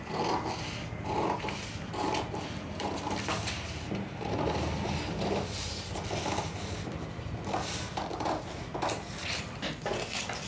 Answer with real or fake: real